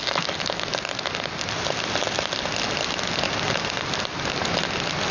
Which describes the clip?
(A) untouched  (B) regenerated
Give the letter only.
A